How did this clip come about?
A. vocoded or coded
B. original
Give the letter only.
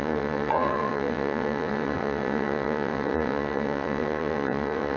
A